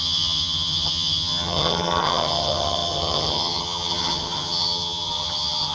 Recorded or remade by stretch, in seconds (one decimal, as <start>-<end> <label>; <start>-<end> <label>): 0.0-5.7 remade